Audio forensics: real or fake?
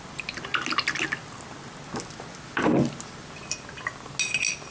real